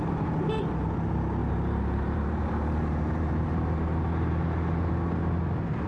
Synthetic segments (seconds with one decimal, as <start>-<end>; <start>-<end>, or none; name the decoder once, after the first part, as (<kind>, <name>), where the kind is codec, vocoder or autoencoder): 1.4-4.9 (vocoder, BigVGAN v2)